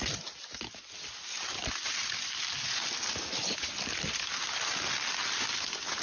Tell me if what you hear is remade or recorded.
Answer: recorded